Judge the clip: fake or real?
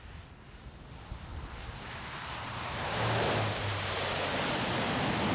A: real